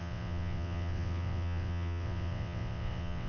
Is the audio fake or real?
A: fake